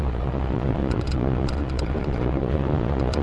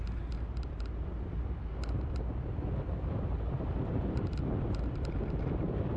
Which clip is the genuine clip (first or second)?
second